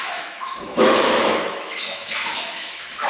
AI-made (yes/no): yes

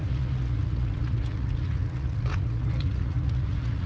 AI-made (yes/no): yes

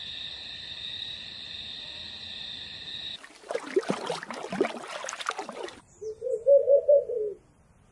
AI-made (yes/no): no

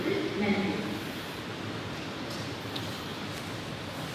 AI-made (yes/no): no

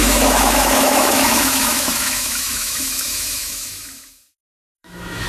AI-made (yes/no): yes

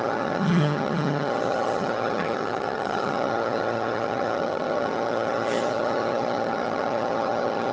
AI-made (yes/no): yes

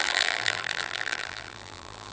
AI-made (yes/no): yes